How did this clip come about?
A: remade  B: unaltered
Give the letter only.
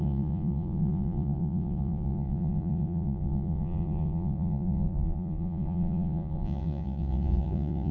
A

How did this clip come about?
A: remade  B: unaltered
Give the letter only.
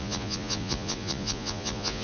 A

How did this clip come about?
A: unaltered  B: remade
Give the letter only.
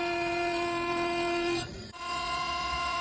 B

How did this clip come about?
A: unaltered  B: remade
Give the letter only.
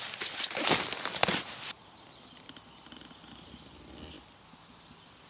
A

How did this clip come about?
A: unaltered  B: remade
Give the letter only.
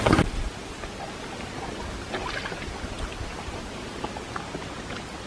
A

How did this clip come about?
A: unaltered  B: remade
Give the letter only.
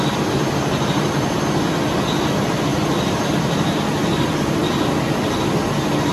A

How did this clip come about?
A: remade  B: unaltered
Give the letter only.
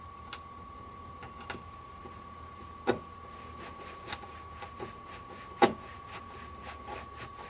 B